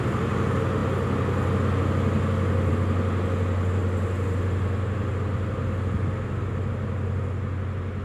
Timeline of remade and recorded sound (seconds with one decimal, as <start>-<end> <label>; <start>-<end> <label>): 0.0-8.0 recorded